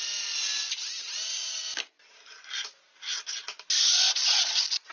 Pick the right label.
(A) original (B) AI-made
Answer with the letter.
A